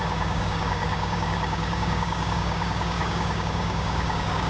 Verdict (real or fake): fake